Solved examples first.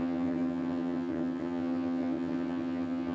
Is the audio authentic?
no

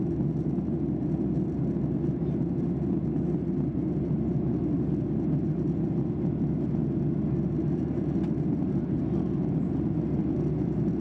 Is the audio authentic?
yes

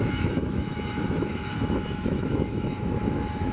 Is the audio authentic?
no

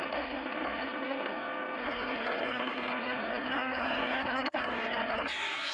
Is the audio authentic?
no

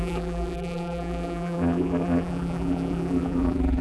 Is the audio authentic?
no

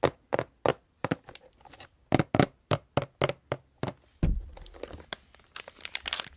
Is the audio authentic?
yes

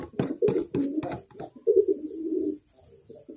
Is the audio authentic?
yes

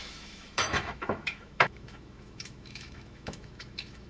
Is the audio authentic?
no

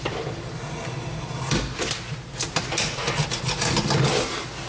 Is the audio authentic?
yes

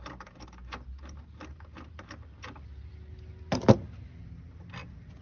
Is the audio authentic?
yes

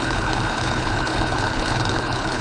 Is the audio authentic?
no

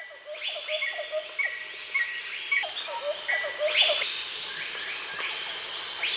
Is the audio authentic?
yes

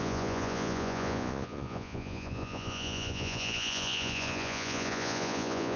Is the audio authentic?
no